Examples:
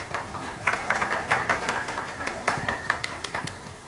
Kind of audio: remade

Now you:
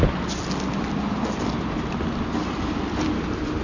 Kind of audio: recorded